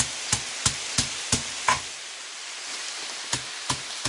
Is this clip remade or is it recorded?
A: recorded